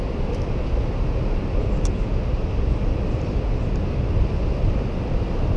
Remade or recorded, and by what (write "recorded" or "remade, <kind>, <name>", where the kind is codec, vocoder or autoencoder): recorded